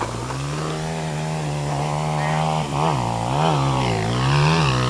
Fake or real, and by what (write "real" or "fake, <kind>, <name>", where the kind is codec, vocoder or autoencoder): real